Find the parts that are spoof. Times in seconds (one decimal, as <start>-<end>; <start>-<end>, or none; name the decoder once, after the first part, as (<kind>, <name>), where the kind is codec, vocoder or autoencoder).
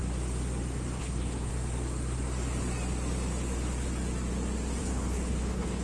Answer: 1.0-1.5 (codec, HILCodec); 4.8-5.8